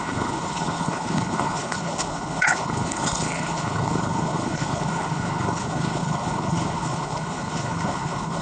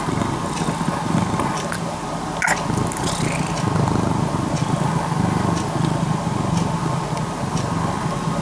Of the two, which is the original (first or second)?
second